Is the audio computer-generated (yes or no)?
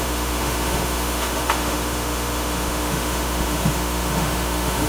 yes